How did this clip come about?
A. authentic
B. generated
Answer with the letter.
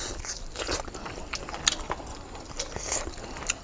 A